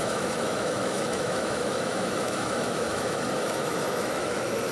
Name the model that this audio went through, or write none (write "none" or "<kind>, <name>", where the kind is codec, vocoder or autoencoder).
autoencoder, DAC-VAE